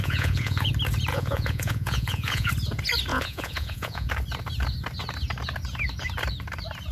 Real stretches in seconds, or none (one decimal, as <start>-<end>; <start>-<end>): 0.7-1.1; 2.5-3.1; 4.1-6.9